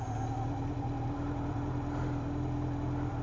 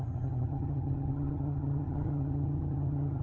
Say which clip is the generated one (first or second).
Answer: second